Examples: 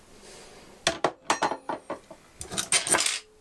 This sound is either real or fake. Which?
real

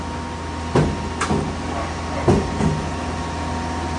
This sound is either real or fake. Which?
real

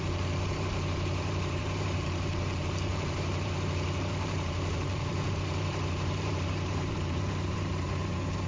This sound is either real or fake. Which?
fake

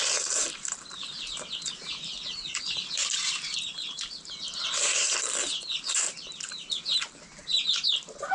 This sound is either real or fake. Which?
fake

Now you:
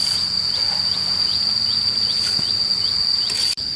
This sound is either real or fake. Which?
real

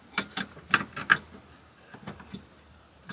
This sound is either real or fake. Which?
real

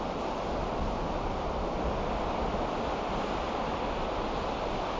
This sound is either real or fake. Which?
real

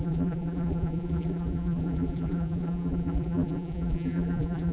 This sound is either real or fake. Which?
fake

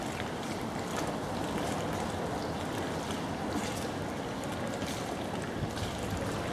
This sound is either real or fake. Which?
real